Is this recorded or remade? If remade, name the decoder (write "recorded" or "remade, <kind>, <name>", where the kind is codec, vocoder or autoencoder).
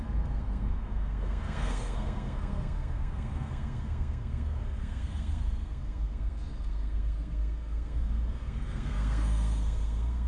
remade, codec, SNAC